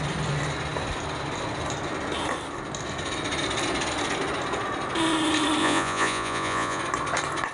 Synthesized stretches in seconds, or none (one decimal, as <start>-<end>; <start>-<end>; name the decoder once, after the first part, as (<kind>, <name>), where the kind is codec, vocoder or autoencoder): 5.6-6.8 (vocoder, Vocos)